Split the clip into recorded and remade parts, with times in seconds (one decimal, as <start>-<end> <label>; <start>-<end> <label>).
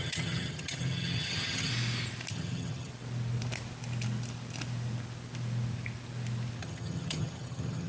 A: 0.0-1.7 remade; 1.7-2.3 recorded; 2.3-2.9 remade; 2.9-6.6 recorded; 6.6-7.9 remade